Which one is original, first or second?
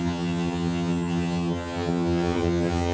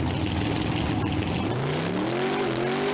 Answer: second